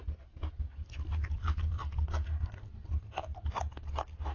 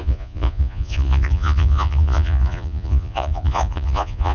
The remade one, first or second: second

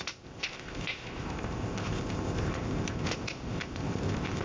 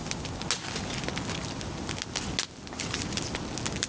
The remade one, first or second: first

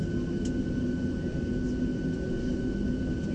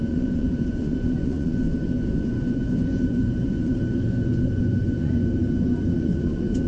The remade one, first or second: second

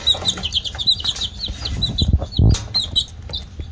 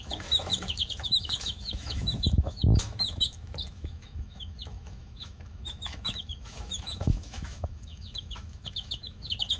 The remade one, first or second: second